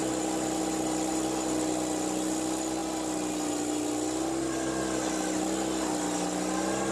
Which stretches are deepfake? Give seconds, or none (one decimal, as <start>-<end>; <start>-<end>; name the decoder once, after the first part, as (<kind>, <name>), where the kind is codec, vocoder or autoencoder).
none